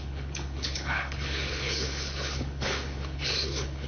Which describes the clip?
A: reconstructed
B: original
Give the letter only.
A